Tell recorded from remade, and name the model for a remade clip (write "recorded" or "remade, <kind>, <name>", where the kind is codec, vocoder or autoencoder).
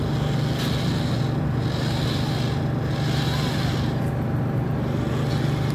recorded